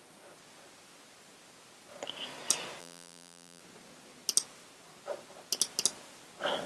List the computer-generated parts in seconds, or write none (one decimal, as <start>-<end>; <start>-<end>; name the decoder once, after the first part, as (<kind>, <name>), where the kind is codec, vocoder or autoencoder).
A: 2.8-3.6 (vocoder, BigVGAN v2)